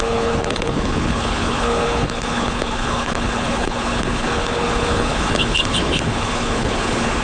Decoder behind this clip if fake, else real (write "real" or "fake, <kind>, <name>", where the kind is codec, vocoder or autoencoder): fake, codec, HILCodec